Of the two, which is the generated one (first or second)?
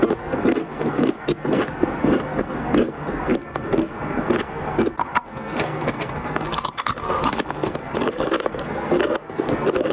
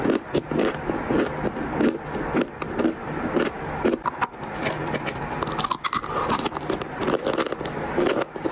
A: first